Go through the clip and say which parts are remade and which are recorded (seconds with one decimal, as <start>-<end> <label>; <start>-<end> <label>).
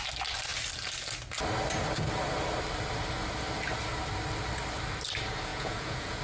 0.0-5.5 recorded; 5.5-6.2 remade